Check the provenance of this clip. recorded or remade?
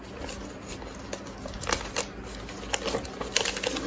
recorded